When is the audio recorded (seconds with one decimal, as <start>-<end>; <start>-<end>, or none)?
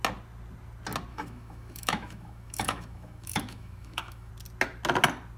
0.0-1.1; 4.3-5.4